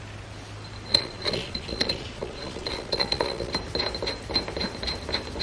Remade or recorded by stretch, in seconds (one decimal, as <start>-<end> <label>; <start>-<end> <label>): 0.0-0.9 recorded; 0.9-3.5 remade; 3.5-5.4 recorded